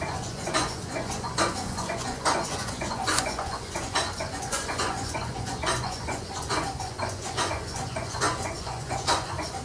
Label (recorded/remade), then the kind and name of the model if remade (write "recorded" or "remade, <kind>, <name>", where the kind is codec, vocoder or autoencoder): remade, vocoder, Vocos